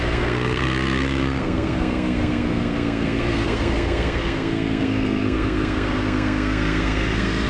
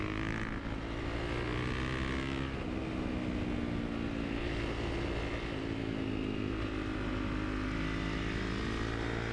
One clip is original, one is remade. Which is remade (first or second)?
first